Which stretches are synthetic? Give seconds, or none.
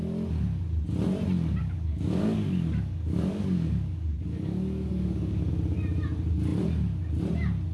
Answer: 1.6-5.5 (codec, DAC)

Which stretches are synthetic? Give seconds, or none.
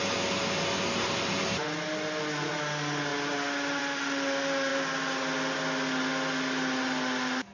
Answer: none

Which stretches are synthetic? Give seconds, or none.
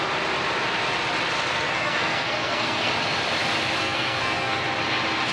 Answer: 1.5-2.9 (codec, SNAC); 3.8-4.6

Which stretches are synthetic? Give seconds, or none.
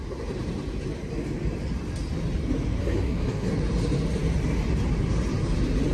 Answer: 2.8-3.5 (codec, SNAC)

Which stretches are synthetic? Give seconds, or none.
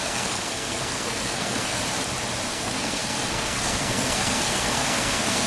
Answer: 0.0-1.8 (codec, SNAC); 2.5-5.5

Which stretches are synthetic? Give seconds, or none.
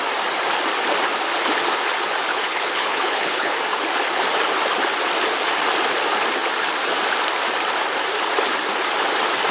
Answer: 2.3-3.6 (codec, HILCodec)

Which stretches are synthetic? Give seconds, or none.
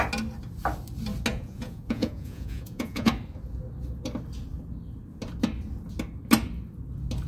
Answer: 1.3-3.1 (vocoder, Vocos)